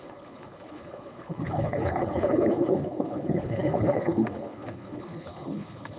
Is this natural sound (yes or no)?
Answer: no